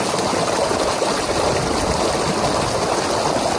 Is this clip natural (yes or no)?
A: yes